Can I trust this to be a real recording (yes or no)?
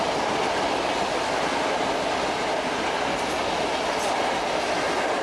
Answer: yes